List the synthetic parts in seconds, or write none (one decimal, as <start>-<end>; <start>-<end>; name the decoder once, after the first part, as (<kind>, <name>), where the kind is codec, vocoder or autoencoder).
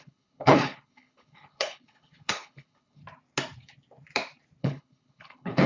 0.0-3.0 (codec, HILCodec); 4.6-5.7